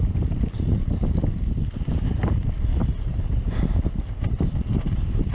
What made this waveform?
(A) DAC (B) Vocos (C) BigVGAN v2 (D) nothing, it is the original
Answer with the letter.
D